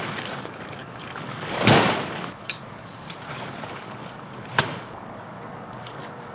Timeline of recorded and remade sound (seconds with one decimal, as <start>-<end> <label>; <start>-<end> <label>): 0.0-6.3 remade